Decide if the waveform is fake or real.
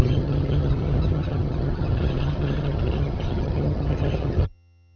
fake